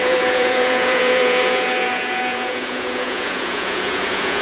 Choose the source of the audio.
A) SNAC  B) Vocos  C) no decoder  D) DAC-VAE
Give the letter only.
B